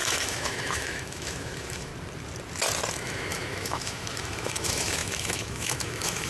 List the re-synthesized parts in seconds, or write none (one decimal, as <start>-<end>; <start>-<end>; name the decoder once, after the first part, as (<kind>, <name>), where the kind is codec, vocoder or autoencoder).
0.0-1.9 (autoencoder, DAC-VAE); 2.9-6.3